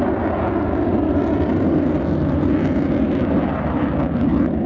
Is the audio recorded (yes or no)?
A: yes